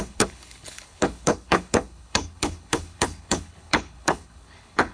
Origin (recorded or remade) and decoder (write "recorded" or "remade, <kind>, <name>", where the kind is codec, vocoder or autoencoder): remade, codec, HILCodec